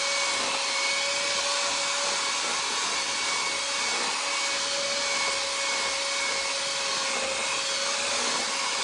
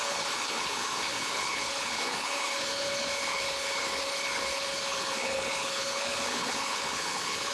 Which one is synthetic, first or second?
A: second